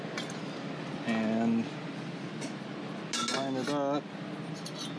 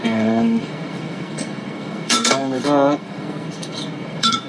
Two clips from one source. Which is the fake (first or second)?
second